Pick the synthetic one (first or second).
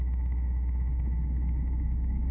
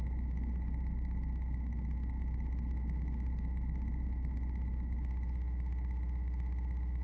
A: first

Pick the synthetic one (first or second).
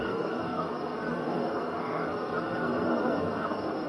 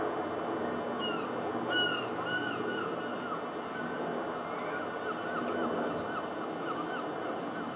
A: first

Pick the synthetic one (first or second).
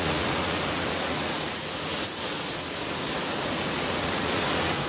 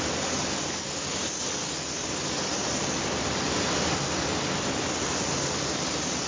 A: first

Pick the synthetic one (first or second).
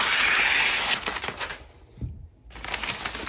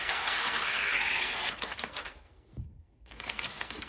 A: second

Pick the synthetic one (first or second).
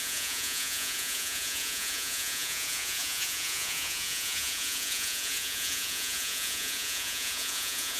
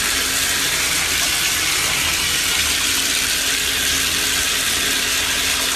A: first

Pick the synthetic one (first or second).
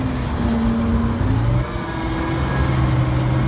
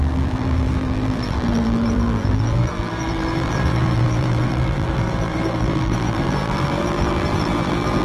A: second